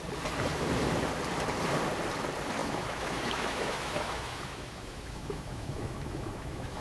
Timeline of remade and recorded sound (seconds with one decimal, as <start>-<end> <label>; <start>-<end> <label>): 0.0-2.6 recorded; 2.6-6.8 remade